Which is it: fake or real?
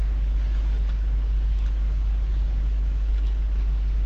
fake